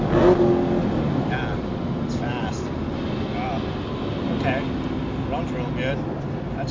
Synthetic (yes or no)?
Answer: no